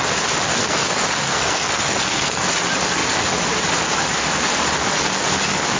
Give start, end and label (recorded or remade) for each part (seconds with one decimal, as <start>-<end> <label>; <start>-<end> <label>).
0.0-0.6 recorded; 0.6-2.4 remade; 2.4-5.8 recorded